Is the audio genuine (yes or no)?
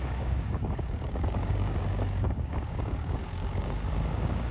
no